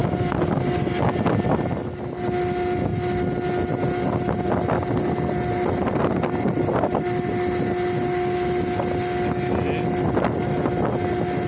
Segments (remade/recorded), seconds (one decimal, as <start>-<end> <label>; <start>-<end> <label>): 0.0-0.8 remade; 0.8-11.5 recorded